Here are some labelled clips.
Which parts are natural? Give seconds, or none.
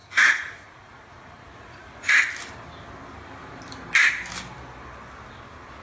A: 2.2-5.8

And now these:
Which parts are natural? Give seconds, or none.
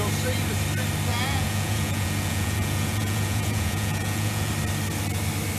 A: 0.0-1.1; 4.5-5.6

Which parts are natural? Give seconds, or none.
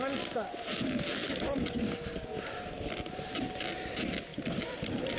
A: 0.0-5.2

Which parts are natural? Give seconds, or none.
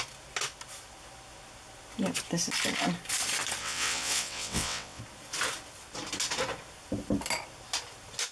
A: 0.0-3.6; 5.0-8.3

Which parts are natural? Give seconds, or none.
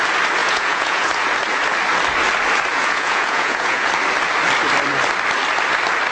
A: 0.0-0.4; 1.1-2.7; 3.9-6.1